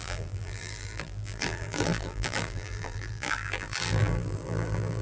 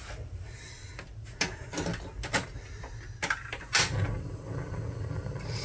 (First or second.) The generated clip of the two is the first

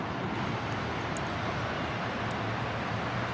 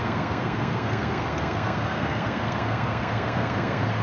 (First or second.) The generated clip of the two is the second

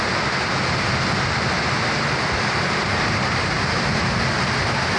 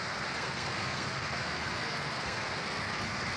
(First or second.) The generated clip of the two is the second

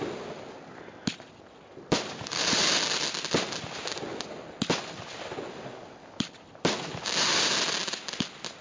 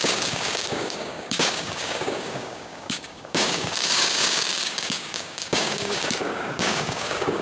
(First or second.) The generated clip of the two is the second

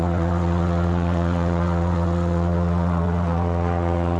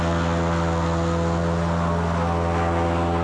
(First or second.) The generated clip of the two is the first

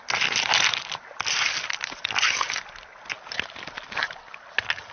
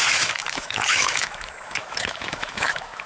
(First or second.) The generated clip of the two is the second